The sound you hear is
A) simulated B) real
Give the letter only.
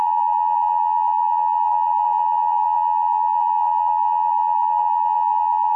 A